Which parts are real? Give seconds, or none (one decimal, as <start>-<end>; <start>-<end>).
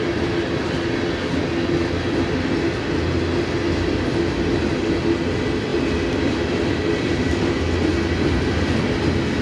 0.0-9.4